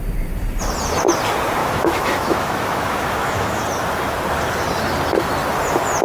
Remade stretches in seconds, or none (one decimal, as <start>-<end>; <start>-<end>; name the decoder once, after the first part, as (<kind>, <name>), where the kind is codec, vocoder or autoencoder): 1.6-3.6 (autoencoder, DAC-VAE)